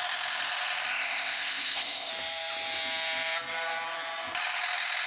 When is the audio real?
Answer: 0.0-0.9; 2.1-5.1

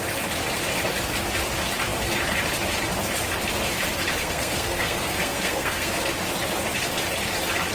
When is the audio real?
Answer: 0.0-4.2; 5.9-7.7

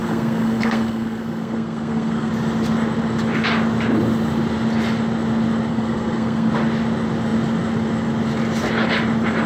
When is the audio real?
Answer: 2.3-5.7; 6.5-9.5

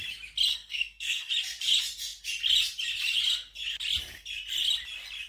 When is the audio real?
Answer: 0.0-0.5; 1.3-5.3

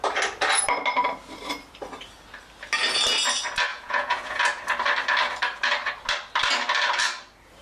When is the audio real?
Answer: 0.0-3.7; 4.4-7.6

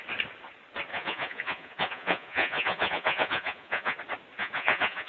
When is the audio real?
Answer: 0.0-0.9; 4.0-4.4

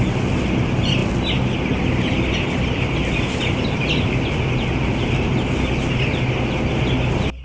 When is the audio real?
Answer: 0.0-7.4